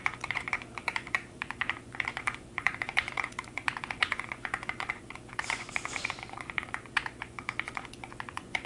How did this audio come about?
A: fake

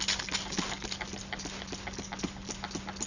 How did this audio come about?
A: real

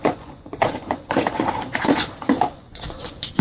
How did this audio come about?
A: fake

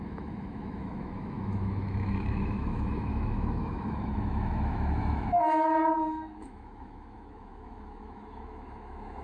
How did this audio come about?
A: fake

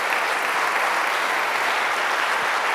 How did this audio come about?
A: real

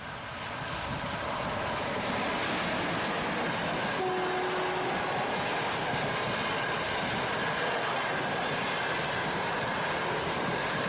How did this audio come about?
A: real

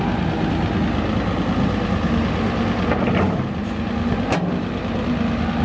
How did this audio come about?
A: real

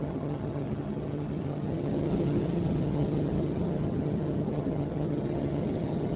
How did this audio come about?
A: fake